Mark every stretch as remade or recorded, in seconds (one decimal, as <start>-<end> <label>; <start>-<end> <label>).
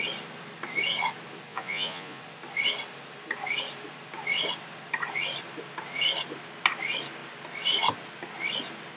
0.0-1.5 recorded; 1.5-2.2 remade; 2.2-9.0 recorded